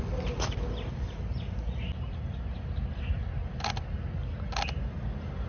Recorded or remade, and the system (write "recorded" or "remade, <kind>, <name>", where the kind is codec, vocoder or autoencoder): recorded